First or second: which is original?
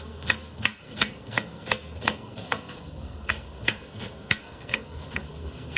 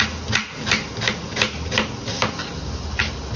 second